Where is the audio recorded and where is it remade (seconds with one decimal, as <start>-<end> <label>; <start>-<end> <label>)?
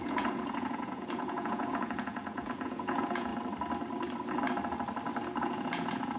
0.0-3.3 remade; 3.3-5.4 recorded; 5.4-6.2 remade